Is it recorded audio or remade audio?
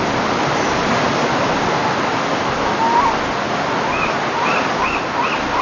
recorded